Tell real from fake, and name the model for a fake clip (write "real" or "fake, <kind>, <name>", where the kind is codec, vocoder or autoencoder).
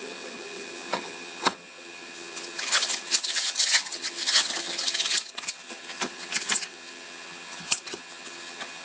fake, vocoder, HiFi-GAN